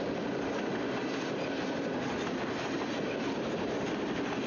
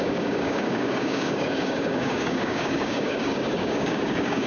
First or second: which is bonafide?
first